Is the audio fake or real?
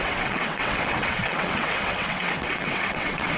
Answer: fake